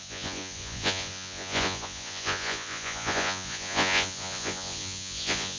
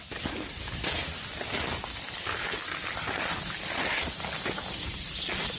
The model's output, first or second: first